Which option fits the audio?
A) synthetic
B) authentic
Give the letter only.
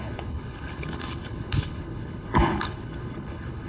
A